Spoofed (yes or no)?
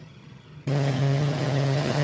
yes